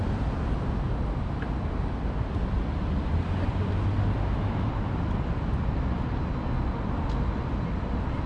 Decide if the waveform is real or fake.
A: real